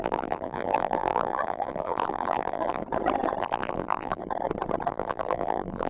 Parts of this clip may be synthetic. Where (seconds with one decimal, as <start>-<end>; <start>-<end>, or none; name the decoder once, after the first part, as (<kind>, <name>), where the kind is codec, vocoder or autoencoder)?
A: 0.0-2.8 (vocoder, BigVGAN v2); 3.4-4.2; 4.9-5.9